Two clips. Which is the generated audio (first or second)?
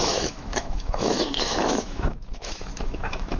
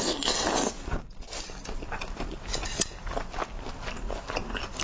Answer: first